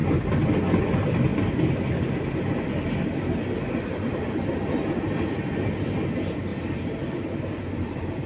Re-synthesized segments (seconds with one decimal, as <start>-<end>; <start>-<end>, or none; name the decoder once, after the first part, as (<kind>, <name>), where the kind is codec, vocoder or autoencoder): 0.8-1.3 (vocoder, BigVGAN v2); 4.1-6.5; 7.2-8.3